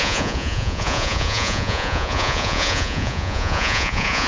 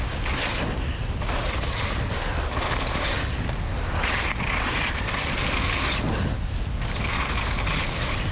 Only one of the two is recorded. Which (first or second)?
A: second